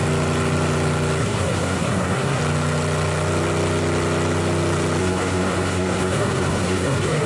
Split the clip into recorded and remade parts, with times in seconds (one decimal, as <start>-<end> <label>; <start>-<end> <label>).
0.0-1.2 recorded; 1.2-2.4 remade; 2.4-5.0 recorded; 5.0-7.3 remade